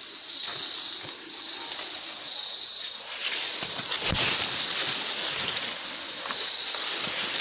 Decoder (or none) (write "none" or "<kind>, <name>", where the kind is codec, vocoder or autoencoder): none